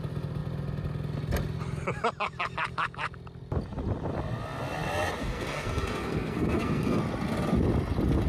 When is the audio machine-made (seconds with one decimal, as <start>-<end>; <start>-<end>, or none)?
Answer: 5.2-7.0

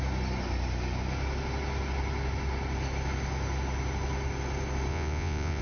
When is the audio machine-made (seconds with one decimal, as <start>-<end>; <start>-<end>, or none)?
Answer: 4.9-5.6

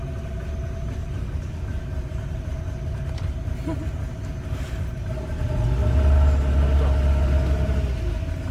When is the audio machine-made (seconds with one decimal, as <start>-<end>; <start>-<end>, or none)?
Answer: 1.0-2.6

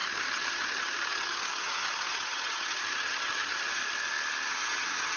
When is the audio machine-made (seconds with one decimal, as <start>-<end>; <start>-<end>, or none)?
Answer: 0.0-3.8; 4.5-5.2

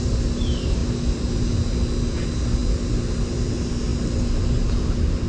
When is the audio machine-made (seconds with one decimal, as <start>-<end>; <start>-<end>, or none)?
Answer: none